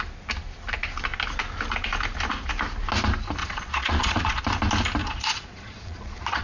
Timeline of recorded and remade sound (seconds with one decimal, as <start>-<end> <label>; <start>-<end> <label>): 0.0-3.4 recorded; 3.4-4.4 remade; 4.4-5.0 recorded; 5.0-6.4 remade